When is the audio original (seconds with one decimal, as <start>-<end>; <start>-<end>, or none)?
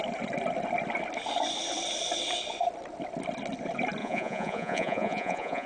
0.0-4.0